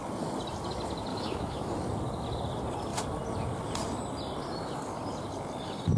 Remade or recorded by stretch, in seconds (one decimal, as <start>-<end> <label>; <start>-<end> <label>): 0.0-1.1 recorded; 1.1-1.7 remade; 1.7-6.0 recorded

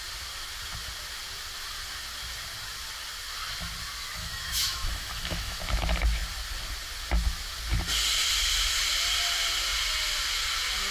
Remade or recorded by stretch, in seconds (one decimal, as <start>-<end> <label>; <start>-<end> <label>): 0.0-4.2 recorded; 4.2-5.6 remade; 5.6-10.9 recorded

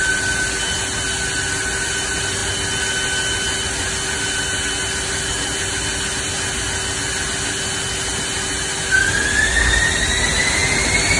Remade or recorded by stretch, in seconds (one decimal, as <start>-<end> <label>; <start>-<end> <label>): 0.0-11.2 recorded

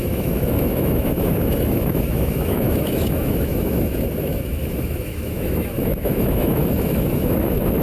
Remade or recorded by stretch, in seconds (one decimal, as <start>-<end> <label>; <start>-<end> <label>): 0.0-7.8 remade

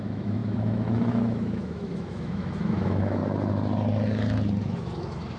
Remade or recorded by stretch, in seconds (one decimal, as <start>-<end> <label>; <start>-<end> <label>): 0.0-3.2 remade; 3.2-4.6 recorded; 4.6-5.4 remade

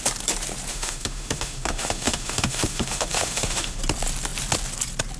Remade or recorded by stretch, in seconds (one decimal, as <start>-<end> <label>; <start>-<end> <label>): 0.0-0.7 recorded; 0.7-3.8 remade; 3.8-5.2 recorded

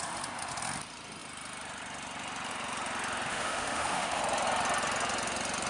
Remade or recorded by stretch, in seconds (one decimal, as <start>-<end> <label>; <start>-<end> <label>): 0.0-3.3 recorded; 3.3-4.2 remade; 4.2-5.7 recorded

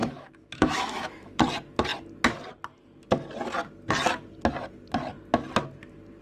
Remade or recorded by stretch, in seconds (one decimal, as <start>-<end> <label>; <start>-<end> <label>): 0.0-1.4 remade; 1.4-6.2 recorded